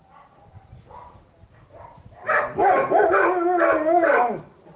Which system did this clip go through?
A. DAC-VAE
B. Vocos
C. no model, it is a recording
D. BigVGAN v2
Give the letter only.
C